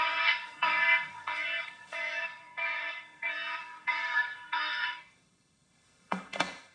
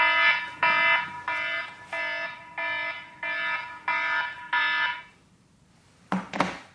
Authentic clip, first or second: second